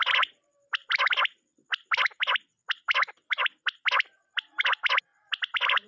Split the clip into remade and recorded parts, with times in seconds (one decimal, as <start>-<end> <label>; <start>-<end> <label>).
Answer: 0.0-5.9 recorded